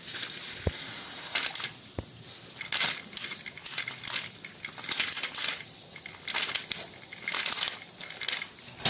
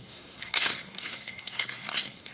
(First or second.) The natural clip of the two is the first